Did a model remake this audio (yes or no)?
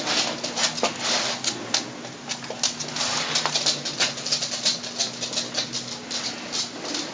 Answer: no